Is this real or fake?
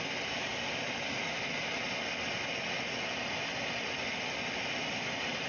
real